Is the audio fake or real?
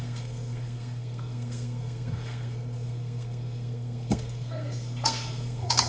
fake